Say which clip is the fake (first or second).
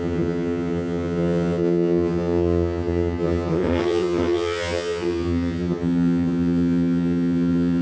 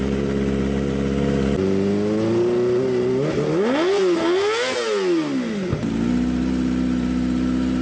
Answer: first